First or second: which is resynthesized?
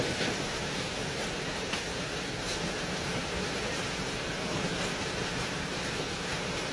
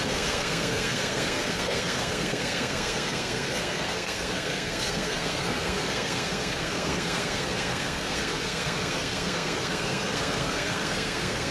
second